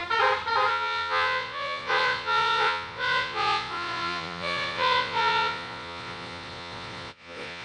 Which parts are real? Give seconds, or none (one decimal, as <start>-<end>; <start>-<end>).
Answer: 0.0-0.7